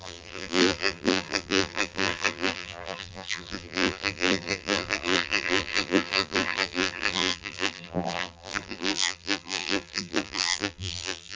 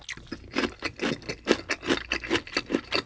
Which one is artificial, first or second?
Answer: first